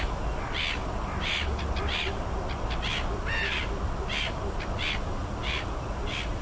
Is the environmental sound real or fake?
real